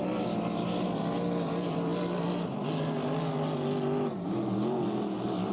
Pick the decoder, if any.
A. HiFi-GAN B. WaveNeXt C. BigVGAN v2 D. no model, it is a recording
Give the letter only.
D